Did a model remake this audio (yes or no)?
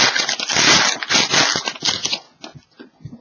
no